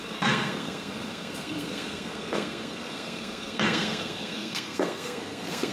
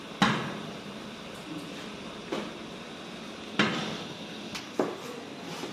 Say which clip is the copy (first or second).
first